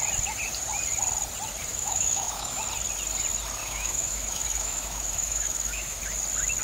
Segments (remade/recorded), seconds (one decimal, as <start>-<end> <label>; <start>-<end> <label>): 0.0-1.7 recorded; 1.7-2.6 remade; 2.6-3.6 recorded; 3.6-6.0 remade; 6.0-6.6 recorded